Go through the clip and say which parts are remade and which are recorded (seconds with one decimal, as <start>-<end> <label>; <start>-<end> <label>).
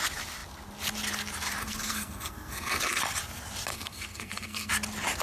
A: 0.0-1.6 recorded; 1.6-3.0 remade; 3.0-3.7 recorded; 3.7-4.7 remade; 4.7-5.2 recorded